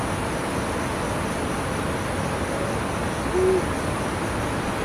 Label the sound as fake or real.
real